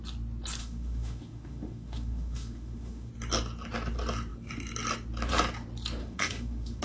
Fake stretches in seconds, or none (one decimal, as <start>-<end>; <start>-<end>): 0.6-3.1; 6.0-6.8